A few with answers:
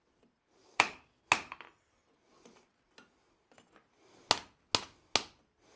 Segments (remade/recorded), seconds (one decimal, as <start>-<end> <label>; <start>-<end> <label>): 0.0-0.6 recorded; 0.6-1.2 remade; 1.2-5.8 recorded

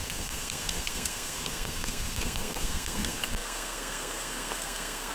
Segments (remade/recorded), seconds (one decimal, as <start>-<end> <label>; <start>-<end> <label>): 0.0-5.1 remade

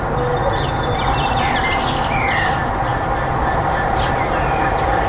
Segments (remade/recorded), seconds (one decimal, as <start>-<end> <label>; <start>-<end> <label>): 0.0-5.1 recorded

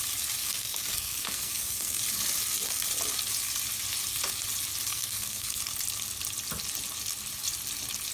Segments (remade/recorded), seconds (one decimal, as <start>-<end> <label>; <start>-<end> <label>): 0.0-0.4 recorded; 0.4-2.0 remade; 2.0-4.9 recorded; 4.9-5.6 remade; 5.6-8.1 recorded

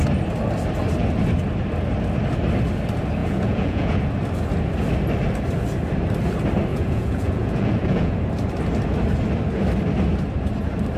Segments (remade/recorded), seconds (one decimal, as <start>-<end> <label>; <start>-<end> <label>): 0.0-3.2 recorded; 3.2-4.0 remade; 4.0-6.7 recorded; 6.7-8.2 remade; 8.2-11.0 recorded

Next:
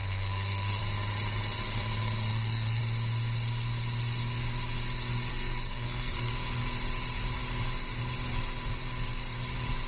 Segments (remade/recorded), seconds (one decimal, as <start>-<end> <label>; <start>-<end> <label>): 0.0-0.8 remade; 0.8-2.3 recorded; 2.3-2.8 remade; 2.8-5.3 recorded; 5.3-6.3 remade; 6.3-9.9 recorded

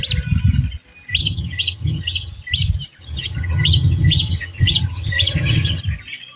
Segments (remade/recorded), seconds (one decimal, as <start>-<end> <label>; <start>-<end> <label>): 0.0-1.2 recorded; 1.2-2.3 remade; 2.3-3.0 recorded; 3.0-5.8 remade; 5.8-6.4 recorded